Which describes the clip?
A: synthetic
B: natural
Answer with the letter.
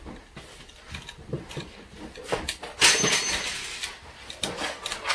B